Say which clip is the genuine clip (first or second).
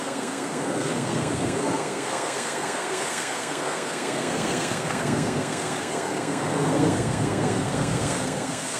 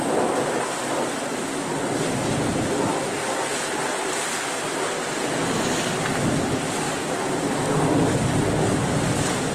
second